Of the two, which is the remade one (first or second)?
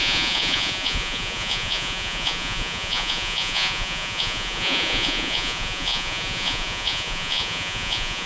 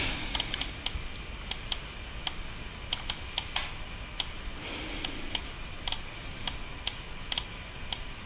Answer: first